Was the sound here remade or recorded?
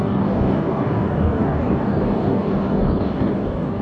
remade